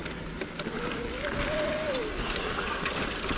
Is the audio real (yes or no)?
yes